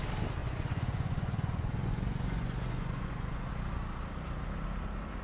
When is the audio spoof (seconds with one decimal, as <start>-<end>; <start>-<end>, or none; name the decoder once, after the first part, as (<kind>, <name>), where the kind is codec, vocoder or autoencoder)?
0.4-3.5 (vocoder, Vocos)